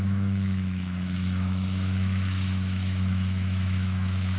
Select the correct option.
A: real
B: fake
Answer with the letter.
B